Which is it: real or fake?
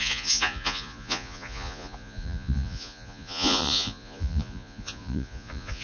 fake